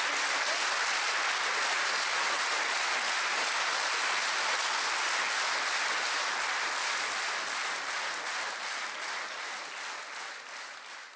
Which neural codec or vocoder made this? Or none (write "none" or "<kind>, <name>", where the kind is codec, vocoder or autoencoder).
none